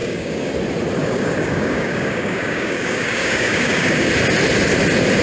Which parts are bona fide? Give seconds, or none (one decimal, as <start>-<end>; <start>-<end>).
0.5-1.0; 4.1-5.2